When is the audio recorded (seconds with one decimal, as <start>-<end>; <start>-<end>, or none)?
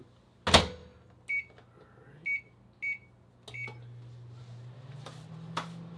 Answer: 0.0-6.0